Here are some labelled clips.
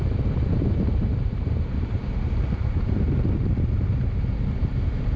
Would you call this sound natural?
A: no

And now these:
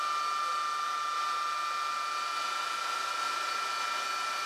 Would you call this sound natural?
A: yes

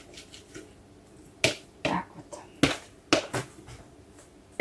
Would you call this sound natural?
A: yes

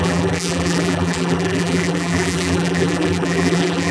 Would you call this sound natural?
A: no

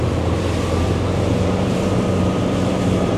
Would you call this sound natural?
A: no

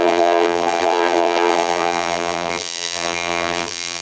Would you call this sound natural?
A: no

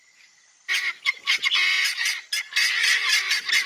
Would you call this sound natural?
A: yes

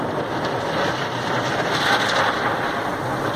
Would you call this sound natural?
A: yes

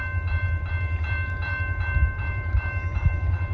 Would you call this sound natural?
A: no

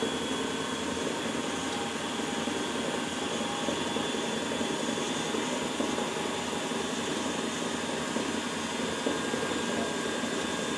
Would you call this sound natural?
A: yes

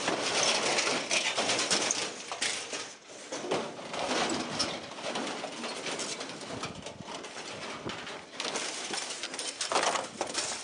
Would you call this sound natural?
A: yes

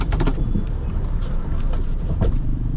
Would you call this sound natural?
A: no